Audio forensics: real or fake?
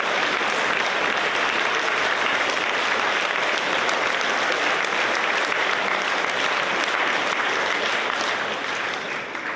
real